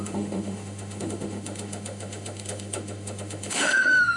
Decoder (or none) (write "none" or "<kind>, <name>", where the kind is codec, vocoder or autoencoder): autoencoder, DAC-VAE